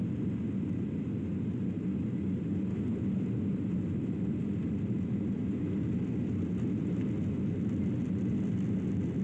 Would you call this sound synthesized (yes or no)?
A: no